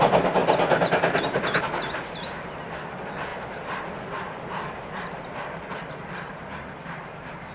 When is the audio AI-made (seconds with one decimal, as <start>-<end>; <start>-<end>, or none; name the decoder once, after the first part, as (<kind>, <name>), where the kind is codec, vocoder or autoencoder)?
none